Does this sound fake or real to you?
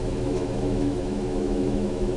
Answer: fake